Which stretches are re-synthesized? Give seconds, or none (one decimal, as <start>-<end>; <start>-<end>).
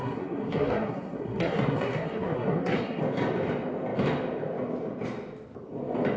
0.0-3.0